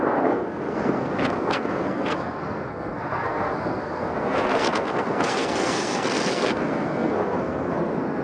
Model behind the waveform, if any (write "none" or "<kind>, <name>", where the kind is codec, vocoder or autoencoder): codec, SNAC